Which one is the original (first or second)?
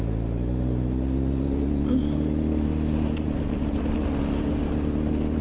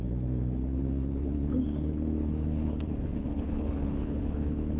first